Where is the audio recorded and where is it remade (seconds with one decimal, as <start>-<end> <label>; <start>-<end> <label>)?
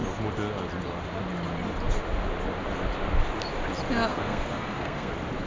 0.0-4.1 recorded; 4.1-5.1 remade; 5.1-5.5 recorded